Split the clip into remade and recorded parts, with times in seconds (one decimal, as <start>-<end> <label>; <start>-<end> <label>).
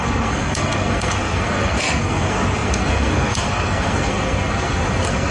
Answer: 0.0-5.3 remade